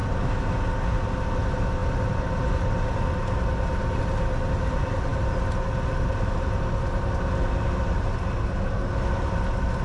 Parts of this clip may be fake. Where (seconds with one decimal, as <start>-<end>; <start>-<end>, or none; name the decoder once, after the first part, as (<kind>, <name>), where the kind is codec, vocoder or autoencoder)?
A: none